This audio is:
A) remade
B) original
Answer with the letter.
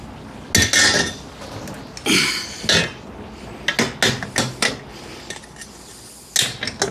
B